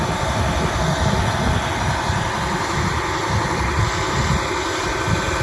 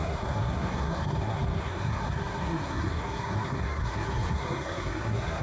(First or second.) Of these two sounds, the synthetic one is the second